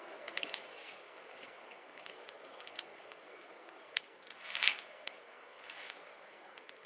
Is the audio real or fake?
fake